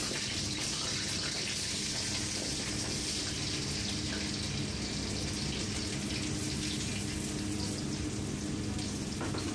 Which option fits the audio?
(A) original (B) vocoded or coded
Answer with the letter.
A